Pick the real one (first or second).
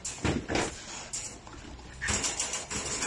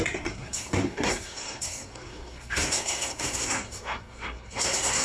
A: first